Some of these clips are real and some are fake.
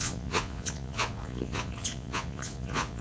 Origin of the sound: fake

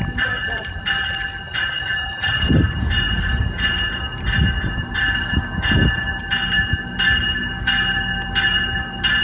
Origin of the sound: real